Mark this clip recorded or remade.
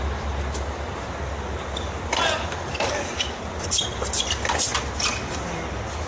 recorded